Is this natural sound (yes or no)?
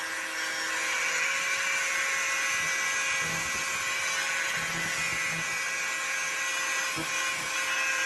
yes